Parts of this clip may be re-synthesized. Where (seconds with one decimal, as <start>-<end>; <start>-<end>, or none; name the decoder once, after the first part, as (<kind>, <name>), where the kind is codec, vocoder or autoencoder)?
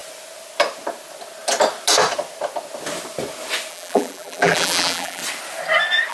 3.7-5.2 (vocoder, BigVGAN v2)